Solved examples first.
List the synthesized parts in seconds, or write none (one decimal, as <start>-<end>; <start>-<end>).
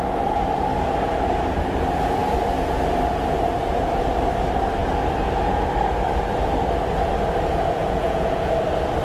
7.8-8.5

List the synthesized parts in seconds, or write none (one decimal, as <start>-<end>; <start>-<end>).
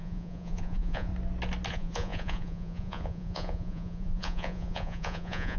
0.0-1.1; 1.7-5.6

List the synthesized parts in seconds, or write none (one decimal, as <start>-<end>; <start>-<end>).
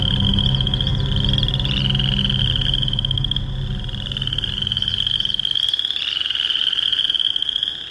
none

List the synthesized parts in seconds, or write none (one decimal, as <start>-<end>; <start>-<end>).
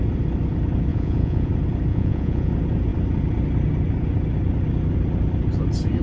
0.9-1.5; 1.9-2.5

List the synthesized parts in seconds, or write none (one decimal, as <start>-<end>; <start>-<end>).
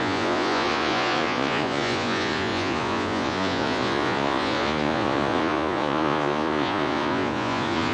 0.0-7.9